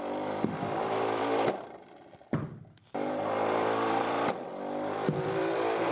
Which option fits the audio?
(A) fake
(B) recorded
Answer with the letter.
A